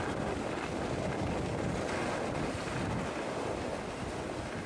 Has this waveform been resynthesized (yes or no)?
no